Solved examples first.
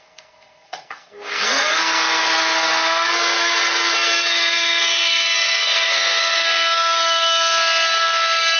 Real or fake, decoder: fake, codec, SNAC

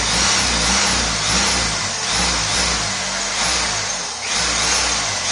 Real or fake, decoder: real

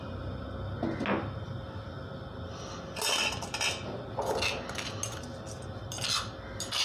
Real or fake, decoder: real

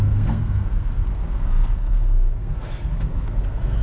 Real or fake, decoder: fake, codec, SNAC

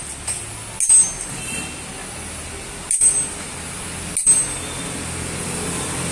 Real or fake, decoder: real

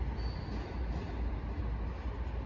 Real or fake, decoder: real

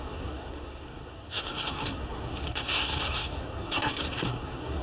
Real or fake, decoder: fake, codec, SNAC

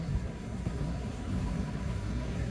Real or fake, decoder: fake, codec, SNAC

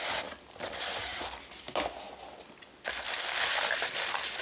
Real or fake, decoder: real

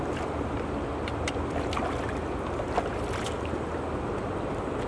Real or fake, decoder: real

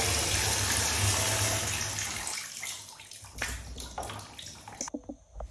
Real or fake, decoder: real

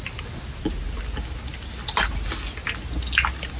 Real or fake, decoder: real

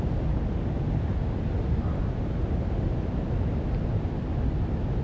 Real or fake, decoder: real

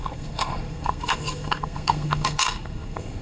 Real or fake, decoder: fake, codec, SNAC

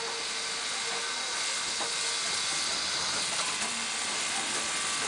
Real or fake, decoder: real